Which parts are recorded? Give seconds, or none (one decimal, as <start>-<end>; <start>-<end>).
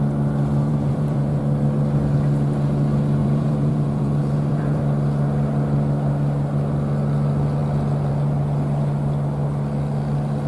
0.0-0.7; 1.4-3.2; 4.8-10.5